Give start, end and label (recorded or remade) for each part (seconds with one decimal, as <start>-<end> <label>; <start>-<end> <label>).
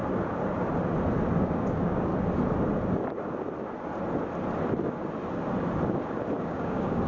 0.0-1.4 recorded; 1.4-2.1 remade; 2.1-6.4 recorded; 6.4-7.1 remade